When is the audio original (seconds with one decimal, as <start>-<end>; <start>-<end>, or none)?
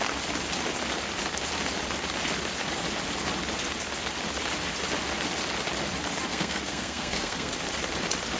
0.0-6.3; 7.5-8.4